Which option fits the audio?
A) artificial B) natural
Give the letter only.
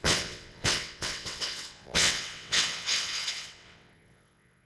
A